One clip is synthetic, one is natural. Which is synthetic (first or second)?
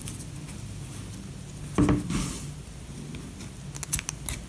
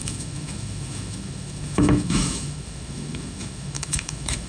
second